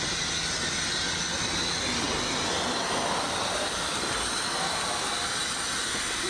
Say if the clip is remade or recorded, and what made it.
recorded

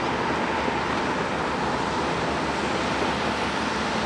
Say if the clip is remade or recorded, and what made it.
recorded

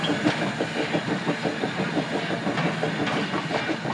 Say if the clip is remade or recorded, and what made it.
recorded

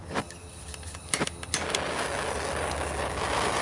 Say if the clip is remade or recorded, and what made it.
recorded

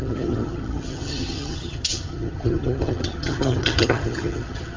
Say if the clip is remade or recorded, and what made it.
remade, vocoder, HiFi-GAN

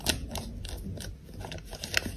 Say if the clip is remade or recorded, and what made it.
recorded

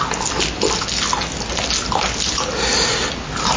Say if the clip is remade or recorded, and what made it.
recorded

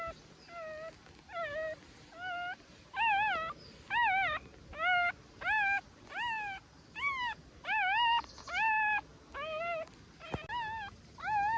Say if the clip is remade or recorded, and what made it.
recorded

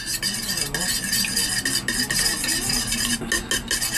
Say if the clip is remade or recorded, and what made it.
recorded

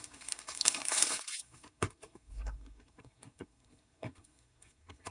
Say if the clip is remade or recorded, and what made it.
remade, codec, SNAC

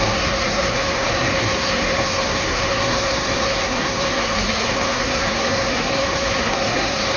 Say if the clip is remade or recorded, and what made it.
remade, codec, SNAC